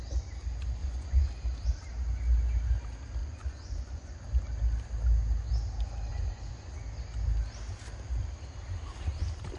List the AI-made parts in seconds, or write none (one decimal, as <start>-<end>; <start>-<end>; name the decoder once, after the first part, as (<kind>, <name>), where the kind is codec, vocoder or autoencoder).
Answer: 0.8-1.3 (vocoder, Vocos); 3.2-4.2; 6.1-6.7